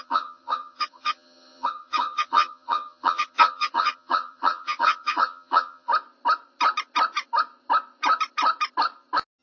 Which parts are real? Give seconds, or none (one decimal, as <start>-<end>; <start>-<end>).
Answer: 5.9-9.4